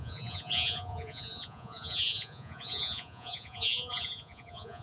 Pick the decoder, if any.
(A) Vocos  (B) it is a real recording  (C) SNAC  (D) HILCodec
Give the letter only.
A